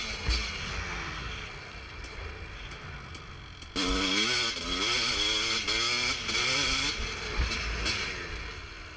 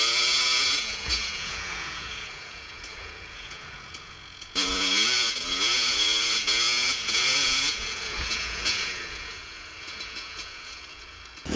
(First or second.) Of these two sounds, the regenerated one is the second